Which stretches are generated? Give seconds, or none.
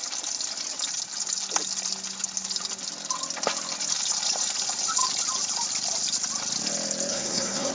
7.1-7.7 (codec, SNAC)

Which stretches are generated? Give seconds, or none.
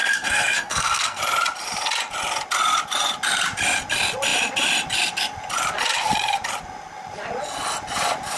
0.0-1.2 (codec, SNAC)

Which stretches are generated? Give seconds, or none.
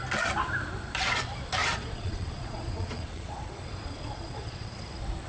1.6-4.8 (vocoder, Vocos)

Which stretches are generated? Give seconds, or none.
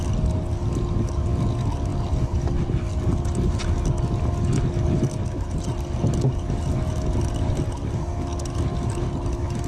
none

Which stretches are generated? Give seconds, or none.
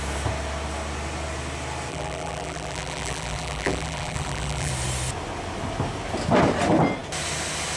1.9-4.7 (vocoder, BigVGAN v2)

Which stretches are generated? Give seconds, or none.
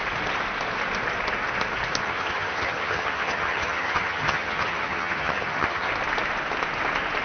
2.0-5.9 (vocoder, HiFi-GAN)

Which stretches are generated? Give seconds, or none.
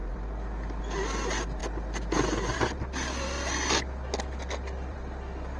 none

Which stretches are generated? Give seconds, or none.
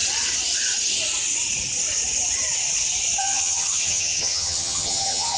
3.2-5.4 (vocoder, HiFi-GAN)